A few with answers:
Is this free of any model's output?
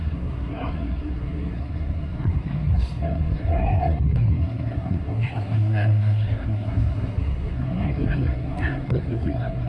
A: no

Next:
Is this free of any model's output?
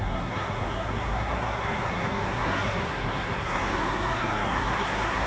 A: no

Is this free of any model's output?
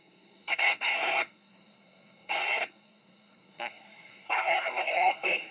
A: no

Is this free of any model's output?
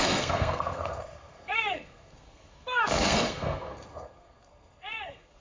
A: no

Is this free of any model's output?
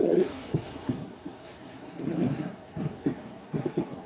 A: no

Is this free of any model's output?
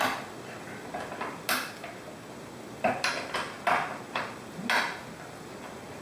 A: yes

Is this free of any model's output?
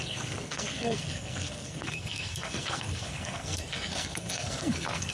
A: no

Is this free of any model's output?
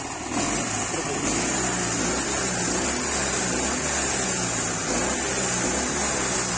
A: yes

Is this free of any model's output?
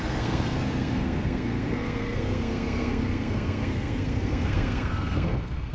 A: no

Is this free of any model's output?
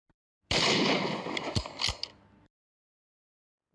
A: yes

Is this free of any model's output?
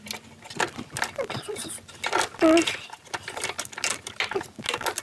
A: yes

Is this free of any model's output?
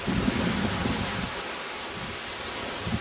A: yes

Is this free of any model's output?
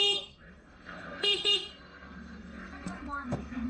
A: no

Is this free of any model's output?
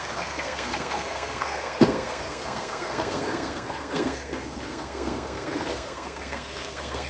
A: no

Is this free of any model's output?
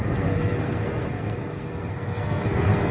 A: no